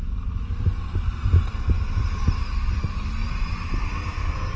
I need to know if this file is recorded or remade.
recorded